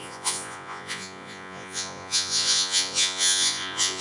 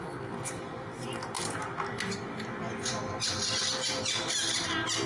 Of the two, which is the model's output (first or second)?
first